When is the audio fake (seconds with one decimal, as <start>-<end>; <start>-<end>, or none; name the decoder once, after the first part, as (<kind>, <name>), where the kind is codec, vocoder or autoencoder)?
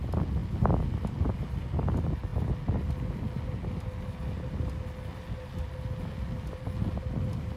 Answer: none